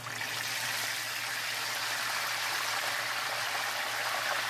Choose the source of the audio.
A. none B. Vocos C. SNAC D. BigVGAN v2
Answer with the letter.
A